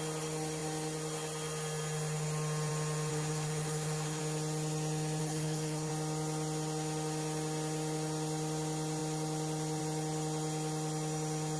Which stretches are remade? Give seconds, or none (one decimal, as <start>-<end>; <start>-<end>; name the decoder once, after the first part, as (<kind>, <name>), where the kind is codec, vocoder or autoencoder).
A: 3.1-4.2 (codec, SNAC); 5.2-5.9